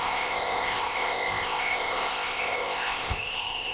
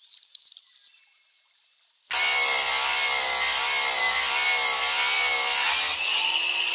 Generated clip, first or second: first